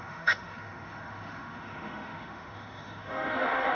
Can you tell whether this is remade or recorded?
remade